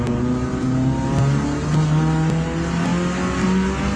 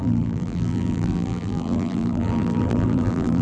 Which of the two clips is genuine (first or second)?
first